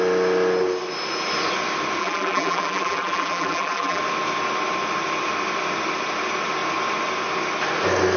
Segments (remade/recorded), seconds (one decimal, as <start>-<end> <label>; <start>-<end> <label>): 0.0-2.0 recorded; 2.0-4.0 remade; 4.0-8.2 recorded